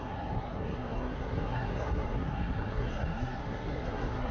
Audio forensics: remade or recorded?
remade